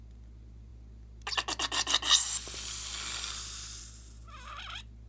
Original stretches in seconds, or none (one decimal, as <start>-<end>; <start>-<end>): 0.0-5.1